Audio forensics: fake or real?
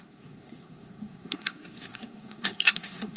fake